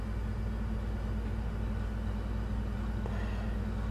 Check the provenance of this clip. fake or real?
real